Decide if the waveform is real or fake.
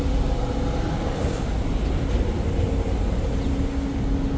real